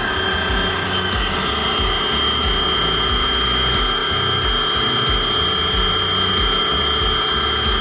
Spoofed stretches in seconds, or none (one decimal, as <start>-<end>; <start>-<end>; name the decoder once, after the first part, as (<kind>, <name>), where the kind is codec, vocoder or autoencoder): none

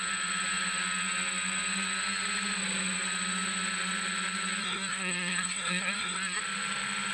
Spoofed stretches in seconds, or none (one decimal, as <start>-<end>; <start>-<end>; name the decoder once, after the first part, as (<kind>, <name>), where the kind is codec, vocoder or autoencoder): 4.6-6.4 (codec, SNAC)

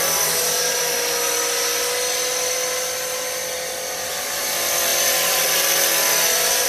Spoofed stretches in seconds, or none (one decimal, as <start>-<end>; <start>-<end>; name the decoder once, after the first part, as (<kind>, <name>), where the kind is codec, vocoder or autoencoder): none